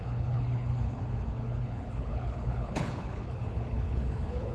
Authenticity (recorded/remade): remade